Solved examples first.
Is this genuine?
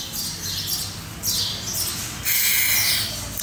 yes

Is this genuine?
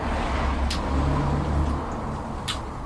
yes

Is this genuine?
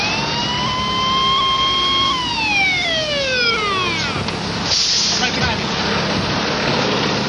yes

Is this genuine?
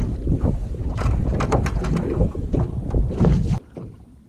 yes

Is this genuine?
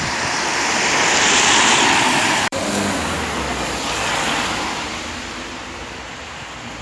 no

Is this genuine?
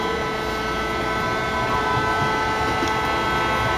yes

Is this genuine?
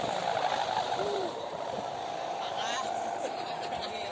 no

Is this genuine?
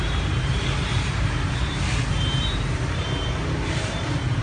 no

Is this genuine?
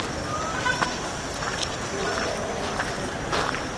no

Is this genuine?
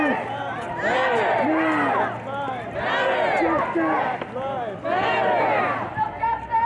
yes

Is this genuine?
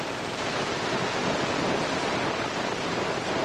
yes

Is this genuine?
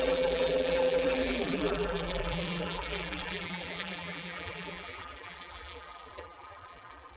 no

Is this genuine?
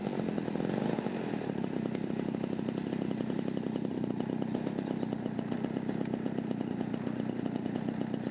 yes